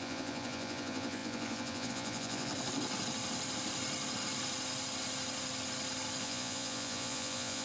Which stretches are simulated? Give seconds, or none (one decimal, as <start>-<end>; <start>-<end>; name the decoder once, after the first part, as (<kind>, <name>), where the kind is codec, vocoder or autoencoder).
0.0-2.5 (vocoder, Vocos); 6.2-7.6